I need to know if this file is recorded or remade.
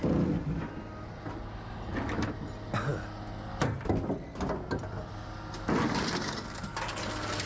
recorded